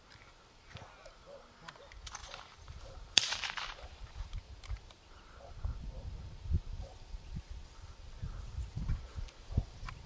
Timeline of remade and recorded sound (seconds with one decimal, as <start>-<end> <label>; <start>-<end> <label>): 0.0-2.2 recorded; 2.2-7.4 remade; 7.4-10.1 recorded